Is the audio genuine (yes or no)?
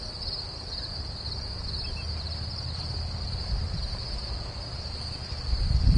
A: yes